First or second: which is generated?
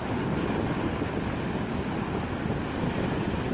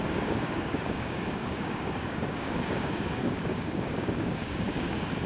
second